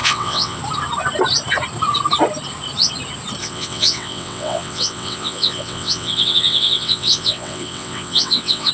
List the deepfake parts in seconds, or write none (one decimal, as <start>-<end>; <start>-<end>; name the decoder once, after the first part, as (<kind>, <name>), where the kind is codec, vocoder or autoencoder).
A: 0.0-0.6 (vocoder, WaveNeXt); 3.4-8.7